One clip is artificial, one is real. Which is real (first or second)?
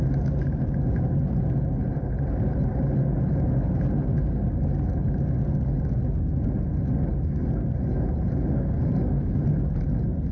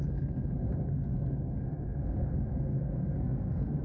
first